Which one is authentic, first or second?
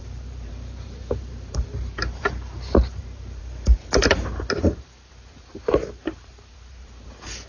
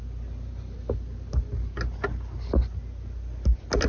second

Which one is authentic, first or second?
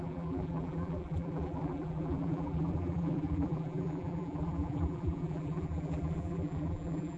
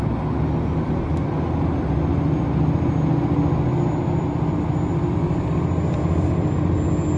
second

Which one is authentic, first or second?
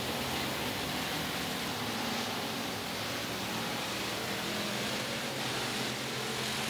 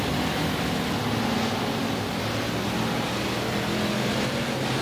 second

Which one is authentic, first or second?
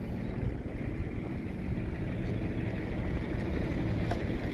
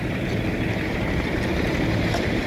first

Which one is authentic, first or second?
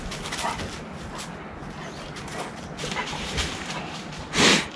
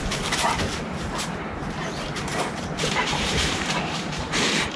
first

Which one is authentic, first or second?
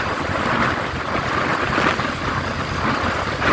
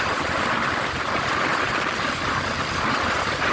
first